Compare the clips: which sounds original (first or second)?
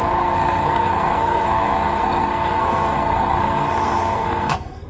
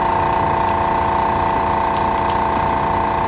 second